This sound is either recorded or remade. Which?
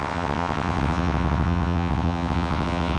remade